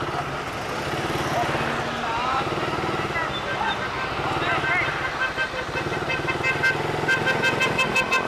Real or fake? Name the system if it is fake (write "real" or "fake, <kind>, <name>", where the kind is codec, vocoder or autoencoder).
real